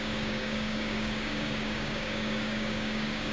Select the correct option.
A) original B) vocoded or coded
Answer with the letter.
B